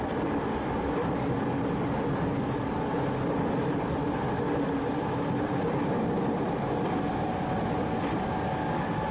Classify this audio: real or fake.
real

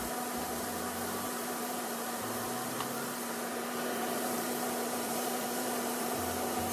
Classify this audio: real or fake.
fake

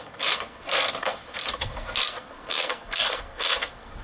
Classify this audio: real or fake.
fake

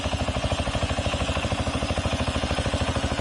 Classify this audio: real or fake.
fake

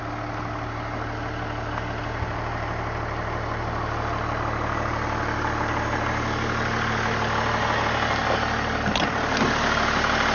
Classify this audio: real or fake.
real